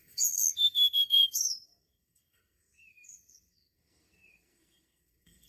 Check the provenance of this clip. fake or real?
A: fake